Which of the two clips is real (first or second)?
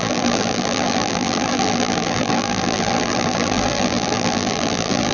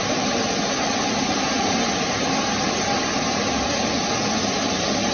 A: second